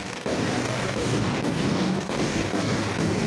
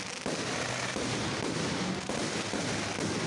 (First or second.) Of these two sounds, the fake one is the first